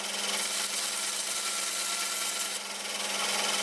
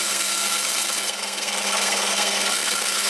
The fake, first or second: second